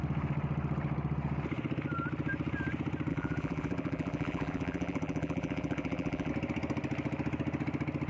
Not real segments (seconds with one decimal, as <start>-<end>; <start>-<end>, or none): 3.1-6.3